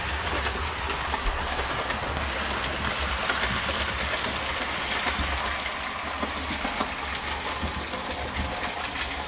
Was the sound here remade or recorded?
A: recorded